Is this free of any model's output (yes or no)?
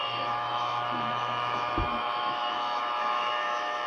no